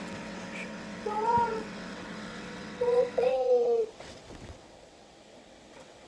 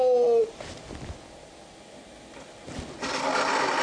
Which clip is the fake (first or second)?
first